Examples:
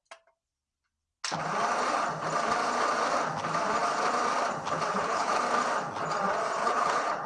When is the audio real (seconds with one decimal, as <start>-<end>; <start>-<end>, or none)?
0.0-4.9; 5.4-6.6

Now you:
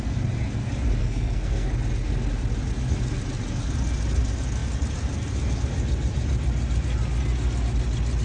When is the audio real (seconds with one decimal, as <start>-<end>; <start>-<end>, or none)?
0.0-1.0; 1.7-8.2

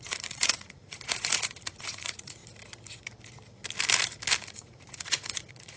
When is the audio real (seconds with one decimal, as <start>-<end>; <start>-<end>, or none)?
2.4-4.4

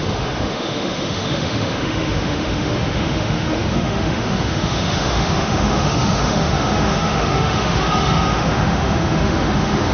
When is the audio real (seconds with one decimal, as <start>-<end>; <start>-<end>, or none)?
none

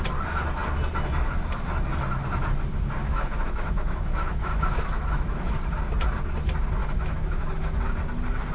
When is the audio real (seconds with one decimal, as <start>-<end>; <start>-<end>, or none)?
0.0-3.0; 5.6-6.8; 7.9-8.5

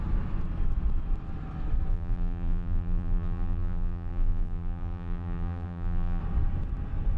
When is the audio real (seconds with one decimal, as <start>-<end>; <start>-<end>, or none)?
0.0-1.9; 6.2-7.2

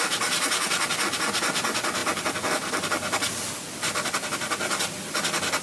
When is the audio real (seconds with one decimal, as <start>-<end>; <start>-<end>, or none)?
0.0-5.6